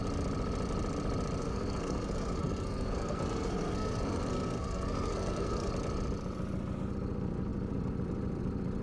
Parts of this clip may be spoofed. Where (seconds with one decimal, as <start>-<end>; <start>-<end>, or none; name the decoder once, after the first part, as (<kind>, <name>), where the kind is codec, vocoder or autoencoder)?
1.4-5.7 (codec, SNAC)